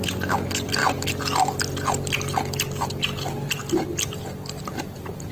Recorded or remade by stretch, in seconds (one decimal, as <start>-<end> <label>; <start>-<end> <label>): 0.0-5.3 recorded

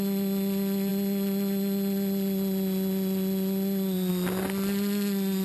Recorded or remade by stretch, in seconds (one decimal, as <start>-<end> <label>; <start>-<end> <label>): 0.0-5.4 recorded

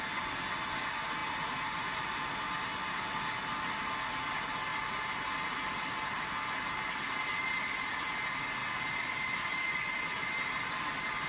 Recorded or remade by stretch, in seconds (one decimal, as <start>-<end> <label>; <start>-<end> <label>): 0.0-11.3 recorded

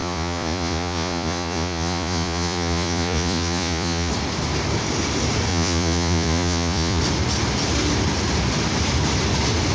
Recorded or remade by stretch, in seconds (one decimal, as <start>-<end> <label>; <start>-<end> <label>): 0.0-4.1 remade; 4.1-5.5 recorded; 5.5-7.0 remade; 7.0-9.7 recorded

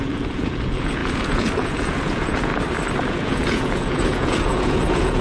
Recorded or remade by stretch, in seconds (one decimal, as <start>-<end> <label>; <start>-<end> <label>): 0.0-2.5 remade; 2.5-3.1 recorded; 3.1-5.2 remade

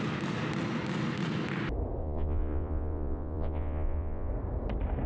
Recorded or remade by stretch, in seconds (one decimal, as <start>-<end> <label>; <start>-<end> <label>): 0.0-2.0 recorded; 2.0-4.3 remade; 4.3-5.1 recorded

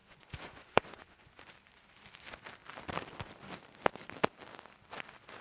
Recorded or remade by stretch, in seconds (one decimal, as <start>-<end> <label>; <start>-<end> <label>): 0.0-1.5 remade; 1.5-5.4 recorded

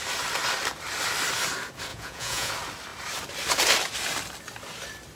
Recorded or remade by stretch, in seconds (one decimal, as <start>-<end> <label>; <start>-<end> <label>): 0.0-1.9 recorded; 1.9-2.5 remade; 2.5-5.2 recorded